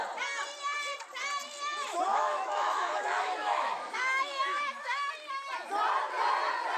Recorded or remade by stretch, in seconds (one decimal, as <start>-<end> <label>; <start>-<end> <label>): 0.0-2.1 recorded; 2.1-5.1 remade; 5.1-6.8 recorded